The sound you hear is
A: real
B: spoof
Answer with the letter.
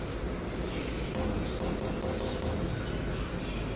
A